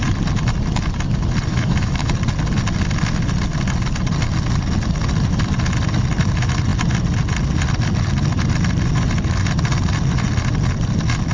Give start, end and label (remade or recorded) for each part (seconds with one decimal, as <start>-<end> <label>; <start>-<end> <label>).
0.0-1.5 recorded; 1.5-2.1 remade; 2.1-11.3 recorded